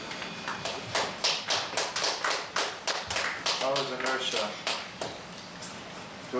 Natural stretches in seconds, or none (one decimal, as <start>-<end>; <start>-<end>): 0.0-4.7; 5.6-6.4